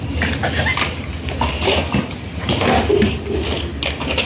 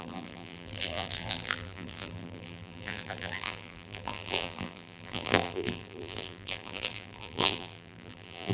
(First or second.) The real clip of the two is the first